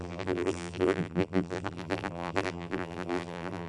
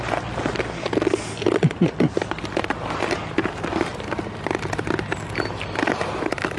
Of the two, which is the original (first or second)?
second